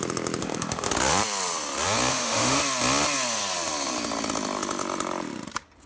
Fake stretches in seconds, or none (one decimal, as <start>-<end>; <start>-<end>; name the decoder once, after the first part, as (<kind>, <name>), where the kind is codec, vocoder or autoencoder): 0.4-0.9 (autoencoder, DAC-VAE); 2.1-2.6